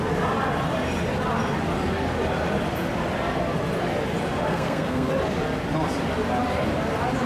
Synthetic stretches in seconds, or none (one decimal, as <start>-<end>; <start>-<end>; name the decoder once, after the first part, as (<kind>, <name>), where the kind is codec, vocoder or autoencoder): 4.5-5.1 (codec, SNAC)